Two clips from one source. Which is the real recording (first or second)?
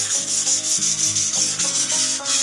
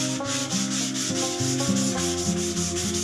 second